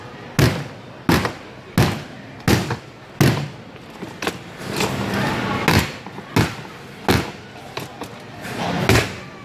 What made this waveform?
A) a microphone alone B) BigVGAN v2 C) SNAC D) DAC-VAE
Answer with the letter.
A